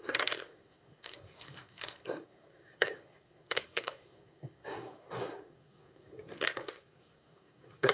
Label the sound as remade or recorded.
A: remade